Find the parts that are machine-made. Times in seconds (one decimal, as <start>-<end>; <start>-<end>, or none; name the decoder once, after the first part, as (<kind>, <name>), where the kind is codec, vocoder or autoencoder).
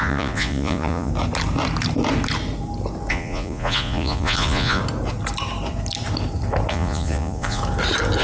0.0-1.1 (vocoder, Vocos); 3.1-4.8; 6.7-7.6